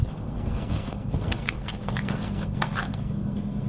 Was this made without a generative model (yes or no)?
no